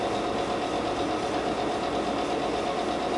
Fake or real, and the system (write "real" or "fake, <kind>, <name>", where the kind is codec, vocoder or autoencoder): real